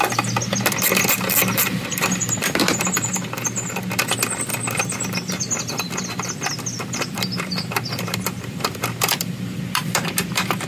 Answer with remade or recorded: recorded